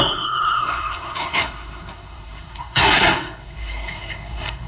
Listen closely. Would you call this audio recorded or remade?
remade